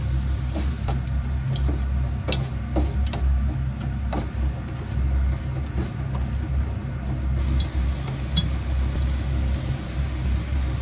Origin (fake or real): real